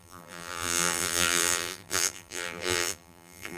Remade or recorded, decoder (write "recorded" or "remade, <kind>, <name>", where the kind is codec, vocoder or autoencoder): remade, vocoder, BigVGAN v2